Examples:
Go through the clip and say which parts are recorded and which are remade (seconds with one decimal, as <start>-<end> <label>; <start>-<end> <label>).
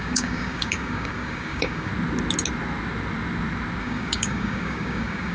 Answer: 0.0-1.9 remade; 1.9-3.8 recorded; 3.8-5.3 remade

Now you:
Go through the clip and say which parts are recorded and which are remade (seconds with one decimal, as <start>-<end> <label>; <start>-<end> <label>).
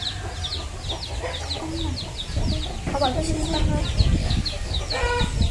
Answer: 0.0-4.2 recorded; 4.2-4.8 remade; 4.8-5.5 recorded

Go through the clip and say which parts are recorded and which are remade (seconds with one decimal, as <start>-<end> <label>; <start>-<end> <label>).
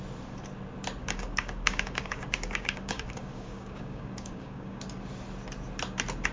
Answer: 0.0-1.0 recorded; 1.0-4.8 remade; 4.8-6.3 recorded